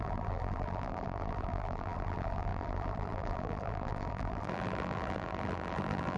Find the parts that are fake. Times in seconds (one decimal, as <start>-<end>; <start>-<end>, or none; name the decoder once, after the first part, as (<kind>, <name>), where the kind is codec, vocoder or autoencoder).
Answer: 0.0-6.2 (vocoder, BigVGAN v2)